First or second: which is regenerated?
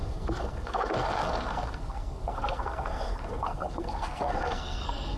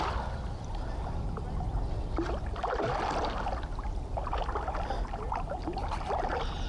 first